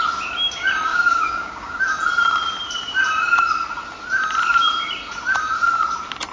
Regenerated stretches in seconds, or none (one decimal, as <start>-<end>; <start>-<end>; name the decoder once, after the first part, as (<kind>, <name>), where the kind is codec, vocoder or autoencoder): 0.9-1.8 (codec, DAC)